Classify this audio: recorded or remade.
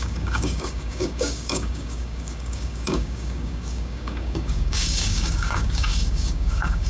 remade